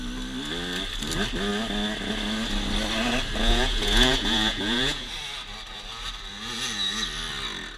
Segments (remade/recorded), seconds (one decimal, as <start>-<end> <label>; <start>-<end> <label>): 0.0-3.4 recorded; 3.4-5.1 remade; 5.1-7.8 recorded